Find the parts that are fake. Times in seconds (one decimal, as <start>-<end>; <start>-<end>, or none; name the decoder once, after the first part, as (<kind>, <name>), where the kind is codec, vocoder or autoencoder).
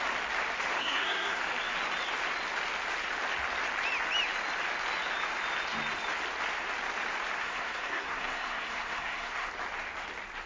0.8-1.4 (codec, SNAC); 7.4-9.5